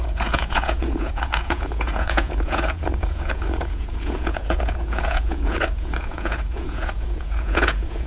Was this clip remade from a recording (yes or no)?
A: yes